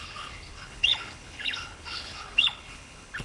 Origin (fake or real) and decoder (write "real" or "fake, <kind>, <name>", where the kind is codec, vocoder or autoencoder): fake, codec, HILCodec